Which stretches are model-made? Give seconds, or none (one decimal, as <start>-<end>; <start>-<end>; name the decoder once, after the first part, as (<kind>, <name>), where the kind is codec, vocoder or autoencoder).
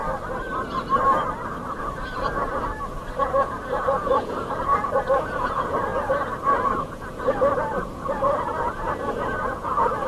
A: 1.8-10.1 (vocoder, Vocos)